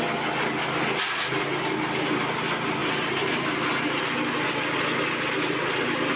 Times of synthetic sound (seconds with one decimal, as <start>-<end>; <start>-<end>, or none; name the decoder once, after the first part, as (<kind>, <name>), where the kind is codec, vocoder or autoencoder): 2.8-4.0 (vocoder, BigVGAN v2)

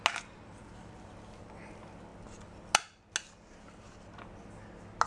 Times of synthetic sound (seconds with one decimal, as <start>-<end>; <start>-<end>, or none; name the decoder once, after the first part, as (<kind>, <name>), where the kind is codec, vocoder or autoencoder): none